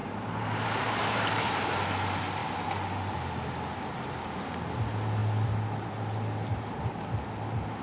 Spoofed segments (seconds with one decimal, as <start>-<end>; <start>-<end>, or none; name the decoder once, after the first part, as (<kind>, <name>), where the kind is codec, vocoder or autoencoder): 0.0-1.5 (vocoder, BigVGAN v2)